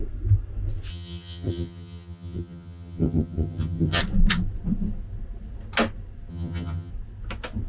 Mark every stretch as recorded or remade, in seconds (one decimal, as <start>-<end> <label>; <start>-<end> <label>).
0.0-0.9 recorded; 0.9-4.0 remade; 4.0-6.3 recorded; 6.3-6.9 remade; 6.9-7.7 recorded

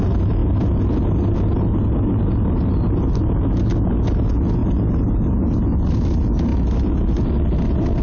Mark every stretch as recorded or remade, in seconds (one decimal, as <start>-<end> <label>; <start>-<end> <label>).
0.0-8.0 recorded

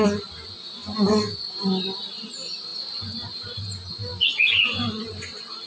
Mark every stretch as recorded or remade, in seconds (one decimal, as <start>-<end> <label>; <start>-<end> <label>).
0.0-5.7 recorded

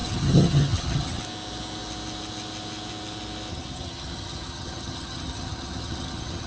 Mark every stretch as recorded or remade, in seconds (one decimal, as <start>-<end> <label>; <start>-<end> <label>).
0.0-1.2 remade; 1.2-3.5 recorded; 3.5-6.5 remade

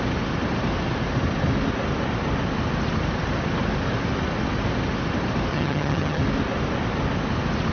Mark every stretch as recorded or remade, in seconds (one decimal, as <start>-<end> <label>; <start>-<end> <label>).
0.0-5.5 recorded; 5.5-6.2 remade; 6.2-7.7 recorded

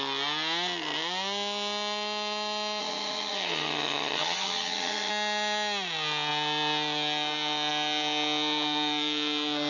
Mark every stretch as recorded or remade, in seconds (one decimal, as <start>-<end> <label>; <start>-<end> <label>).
0.0-2.8 recorded; 2.8-5.1 remade; 5.1-9.7 recorded